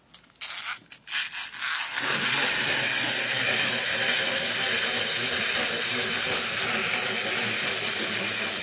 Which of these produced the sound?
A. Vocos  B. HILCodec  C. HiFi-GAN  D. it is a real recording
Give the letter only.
D